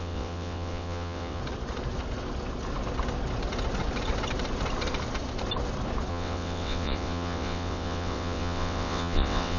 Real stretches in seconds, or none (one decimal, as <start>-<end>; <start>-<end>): 1.4-6.1